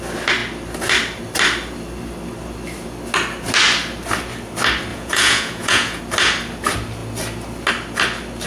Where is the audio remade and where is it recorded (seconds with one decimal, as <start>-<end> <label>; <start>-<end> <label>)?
0.0-4.9 recorded; 4.9-6.0 remade; 6.0-8.5 recorded